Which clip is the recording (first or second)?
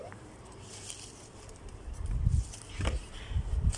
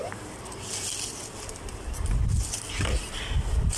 second